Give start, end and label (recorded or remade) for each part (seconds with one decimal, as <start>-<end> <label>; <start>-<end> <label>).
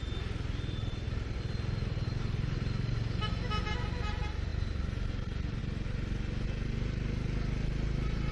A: 0.0-8.3 recorded